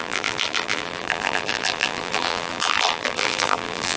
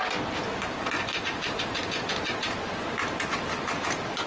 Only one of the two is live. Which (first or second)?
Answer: second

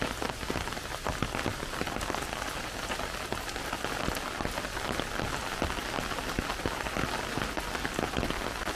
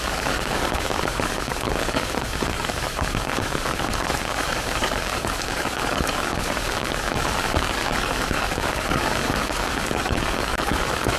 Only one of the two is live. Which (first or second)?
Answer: first